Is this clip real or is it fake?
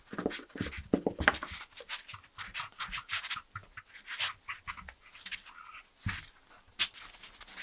real